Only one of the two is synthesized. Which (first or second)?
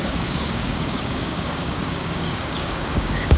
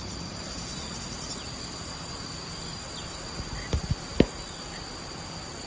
first